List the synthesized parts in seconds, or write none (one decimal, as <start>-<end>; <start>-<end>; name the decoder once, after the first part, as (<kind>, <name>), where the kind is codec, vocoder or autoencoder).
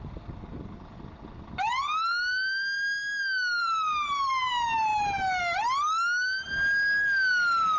3.6-4.5 (vocoder, BigVGAN v2)